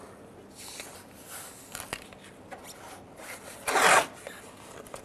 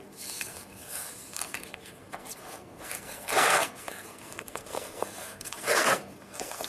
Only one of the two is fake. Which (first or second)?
second